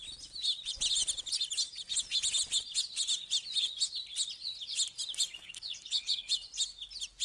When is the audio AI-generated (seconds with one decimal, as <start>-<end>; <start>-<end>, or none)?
5.4-6.3

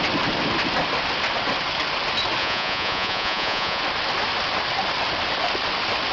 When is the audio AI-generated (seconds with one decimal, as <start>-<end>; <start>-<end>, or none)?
2.4-3.8

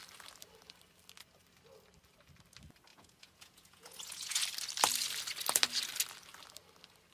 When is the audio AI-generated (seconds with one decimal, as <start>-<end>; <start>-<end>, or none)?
2.9-4.4

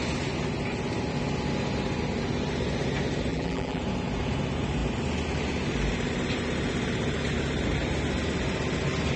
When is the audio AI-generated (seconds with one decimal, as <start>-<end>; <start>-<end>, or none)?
3.3-3.8

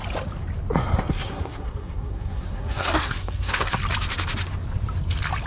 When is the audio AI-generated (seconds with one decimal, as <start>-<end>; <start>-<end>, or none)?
1.1-3.8

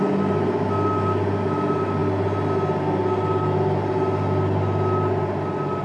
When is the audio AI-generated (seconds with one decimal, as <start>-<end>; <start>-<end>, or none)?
none

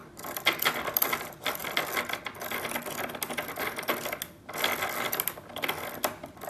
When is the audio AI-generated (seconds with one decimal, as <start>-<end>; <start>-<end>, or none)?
none